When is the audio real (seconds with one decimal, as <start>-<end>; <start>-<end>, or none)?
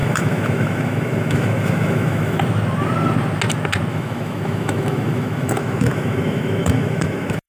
2.4-3.9